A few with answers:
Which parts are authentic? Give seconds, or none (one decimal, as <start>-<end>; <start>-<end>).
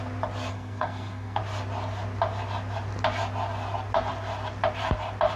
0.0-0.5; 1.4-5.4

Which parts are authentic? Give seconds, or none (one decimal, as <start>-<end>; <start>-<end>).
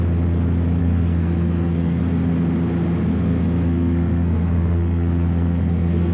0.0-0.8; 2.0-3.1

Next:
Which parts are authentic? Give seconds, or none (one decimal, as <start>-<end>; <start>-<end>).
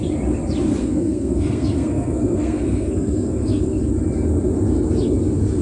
0.0-0.8; 3.8-5.6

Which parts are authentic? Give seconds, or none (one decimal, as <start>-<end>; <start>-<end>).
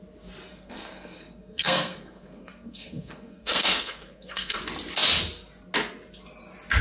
0.0-0.5; 4.6-6.8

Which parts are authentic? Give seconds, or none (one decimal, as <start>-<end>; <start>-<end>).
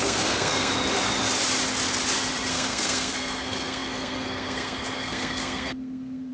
0.7-2.5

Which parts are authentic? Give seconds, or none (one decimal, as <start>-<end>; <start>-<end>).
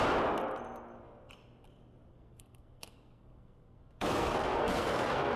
0.0-2.1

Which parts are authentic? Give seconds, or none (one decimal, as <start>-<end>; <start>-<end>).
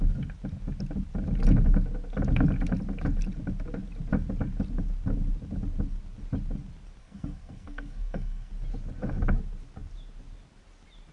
0.0-7.0; 8.5-11.1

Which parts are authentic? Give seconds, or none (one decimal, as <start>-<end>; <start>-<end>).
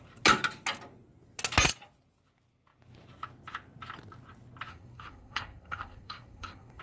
0.0-4.7